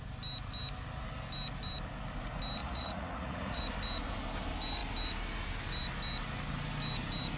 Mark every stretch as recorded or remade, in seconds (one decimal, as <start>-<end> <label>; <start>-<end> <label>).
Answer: 0.0-2.6 recorded; 2.6-3.6 remade; 3.6-7.4 recorded